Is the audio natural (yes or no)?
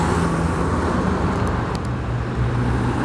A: yes